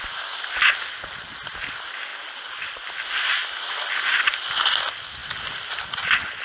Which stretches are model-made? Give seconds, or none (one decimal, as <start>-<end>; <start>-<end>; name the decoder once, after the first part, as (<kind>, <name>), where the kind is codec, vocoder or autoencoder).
none